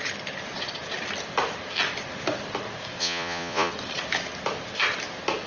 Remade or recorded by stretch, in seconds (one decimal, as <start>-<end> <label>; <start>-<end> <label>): 0.0-3.0 recorded; 3.0-3.7 remade; 3.7-5.5 recorded